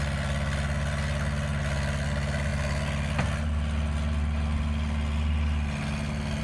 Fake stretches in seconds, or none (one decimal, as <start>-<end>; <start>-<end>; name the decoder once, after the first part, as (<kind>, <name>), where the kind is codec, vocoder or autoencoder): none